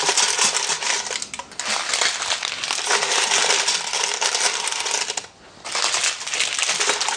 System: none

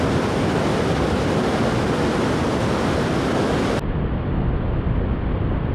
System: none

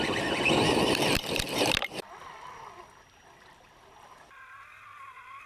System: none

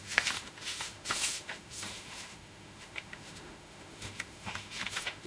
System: autoencoder, DAC-VAE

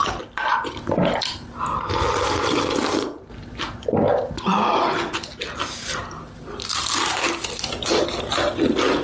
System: none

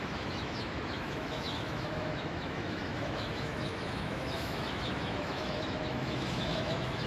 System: autoencoder, DAC-VAE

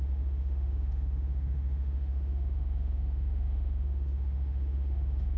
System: autoencoder, DAC-VAE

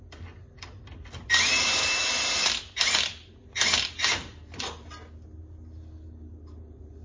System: none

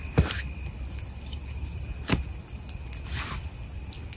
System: none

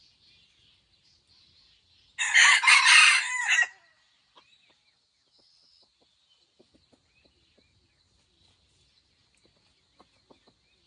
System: none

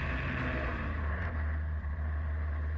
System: none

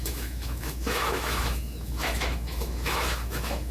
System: autoencoder, DAC-VAE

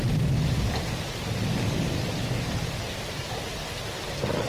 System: none